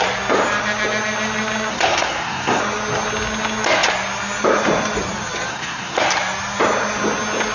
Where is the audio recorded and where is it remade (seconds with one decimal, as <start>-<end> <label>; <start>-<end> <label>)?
0.0-1.7 recorded; 1.7-2.6 remade; 2.6-5.5 recorded; 5.5-6.0 remade; 6.0-7.5 recorded